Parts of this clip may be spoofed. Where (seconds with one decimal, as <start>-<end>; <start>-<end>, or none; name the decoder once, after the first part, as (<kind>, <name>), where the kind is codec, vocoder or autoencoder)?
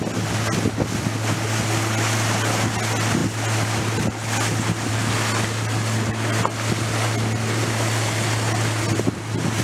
none